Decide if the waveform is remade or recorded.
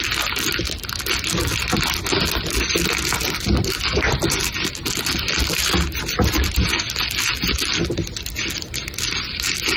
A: recorded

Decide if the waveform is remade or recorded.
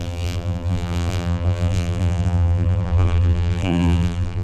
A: remade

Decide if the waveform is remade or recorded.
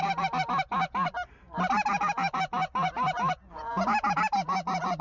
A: recorded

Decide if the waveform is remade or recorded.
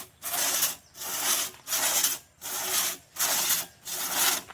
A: recorded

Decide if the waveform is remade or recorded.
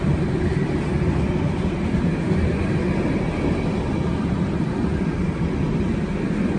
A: recorded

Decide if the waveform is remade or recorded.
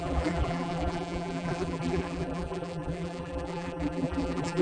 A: remade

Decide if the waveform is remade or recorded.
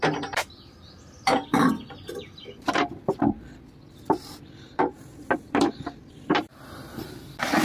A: remade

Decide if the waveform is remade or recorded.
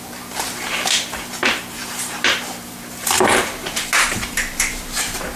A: remade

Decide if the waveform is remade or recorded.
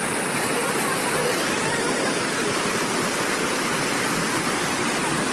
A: recorded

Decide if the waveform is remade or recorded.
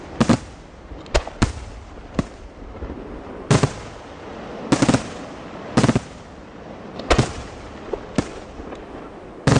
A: recorded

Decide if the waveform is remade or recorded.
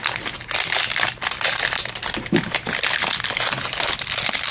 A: recorded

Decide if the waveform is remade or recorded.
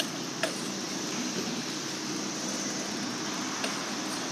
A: recorded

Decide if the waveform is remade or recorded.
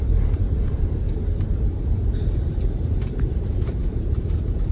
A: remade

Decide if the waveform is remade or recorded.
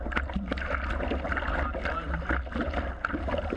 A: recorded